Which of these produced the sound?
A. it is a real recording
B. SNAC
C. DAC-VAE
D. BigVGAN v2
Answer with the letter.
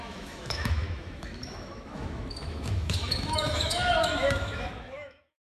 C